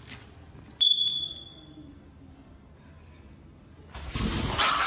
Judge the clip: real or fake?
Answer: real